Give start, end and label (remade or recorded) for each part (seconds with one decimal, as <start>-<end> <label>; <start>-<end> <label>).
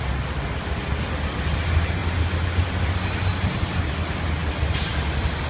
0.0-5.5 recorded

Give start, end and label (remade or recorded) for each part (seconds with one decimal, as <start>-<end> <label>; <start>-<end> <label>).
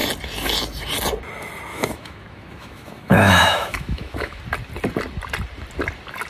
0.0-1.7 recorded; 1.7-4.4 remade; 4.4-6.3 recorded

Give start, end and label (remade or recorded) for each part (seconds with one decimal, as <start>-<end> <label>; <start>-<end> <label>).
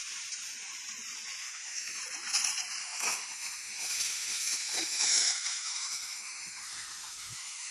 0.0-1.4 recorded; 1.4-2.0 remade; 2.0-2.8 recorded; 2.8-7.7 remade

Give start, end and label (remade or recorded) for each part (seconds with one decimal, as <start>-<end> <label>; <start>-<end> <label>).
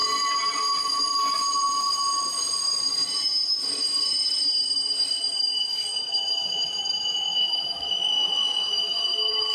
0.0-5.9 recorded; 5.9-9.5 remade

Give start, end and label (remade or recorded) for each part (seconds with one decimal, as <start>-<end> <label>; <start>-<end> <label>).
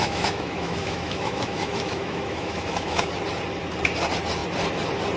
0.0-3.1 remade; 3.1-5.2 recorded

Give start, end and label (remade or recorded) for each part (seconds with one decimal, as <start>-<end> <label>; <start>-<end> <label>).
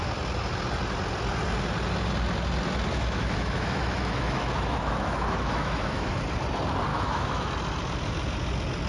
0.0-2.9 recorded; 2.9-6.1 remade; 6.1-6.9 recorded; 6.9-7.5 remade; 7.5-8.9 recorded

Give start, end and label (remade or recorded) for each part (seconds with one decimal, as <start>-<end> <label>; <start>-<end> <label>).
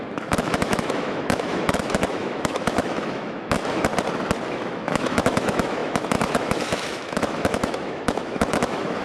0.0-3.9 remade; 3.9-4.5 recorded; 4.5-9.0 remade